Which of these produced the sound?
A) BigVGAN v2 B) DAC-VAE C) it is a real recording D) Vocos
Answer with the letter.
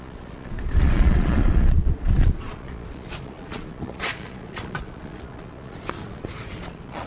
D